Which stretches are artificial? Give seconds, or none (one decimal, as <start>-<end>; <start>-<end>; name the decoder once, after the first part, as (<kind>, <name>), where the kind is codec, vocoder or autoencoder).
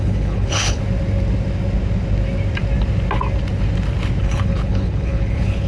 0.0-0.8 (codec, HILCodec); 4.2-5.7